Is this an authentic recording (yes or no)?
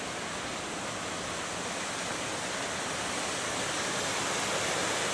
yes